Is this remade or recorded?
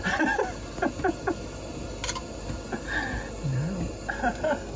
recorded